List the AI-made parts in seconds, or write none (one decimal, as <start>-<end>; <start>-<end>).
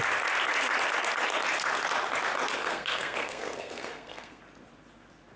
2.6-4.4